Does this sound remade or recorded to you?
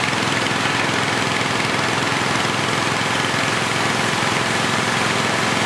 recorded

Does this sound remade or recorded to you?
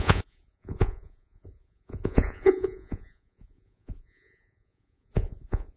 remade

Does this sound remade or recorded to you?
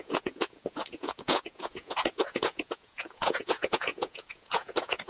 remade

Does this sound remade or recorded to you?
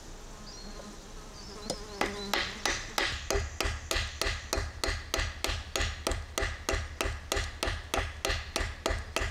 recorded